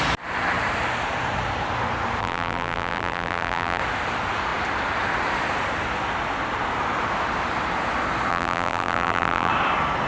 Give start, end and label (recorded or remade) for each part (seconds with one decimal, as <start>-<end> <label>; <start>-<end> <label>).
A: 0.0-2.2 recorded; 2.2-3.8 remade; 3.8-8.3 recorded; 8.3-9.5 remade; 9.5-10.1 recorded